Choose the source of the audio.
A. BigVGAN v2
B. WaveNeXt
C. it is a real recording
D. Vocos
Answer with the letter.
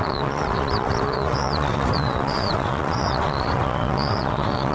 B